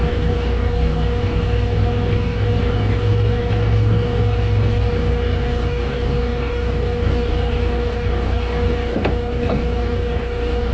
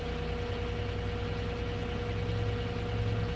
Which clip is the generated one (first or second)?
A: first